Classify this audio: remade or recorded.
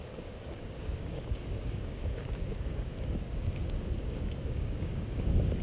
remade